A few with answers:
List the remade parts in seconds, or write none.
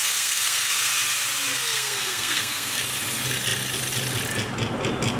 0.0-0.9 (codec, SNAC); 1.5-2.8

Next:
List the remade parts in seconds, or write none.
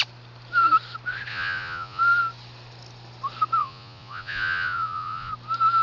1.3-2.0 (vocoder, Vocos); 3.6-5.3